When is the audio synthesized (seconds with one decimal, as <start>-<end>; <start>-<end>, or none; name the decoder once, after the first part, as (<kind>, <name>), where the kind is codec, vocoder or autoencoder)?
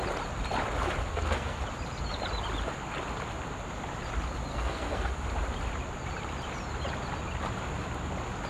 1.1-1.6 (codec, SNAC); 4.5-5.1